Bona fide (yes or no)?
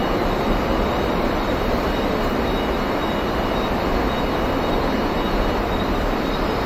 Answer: yes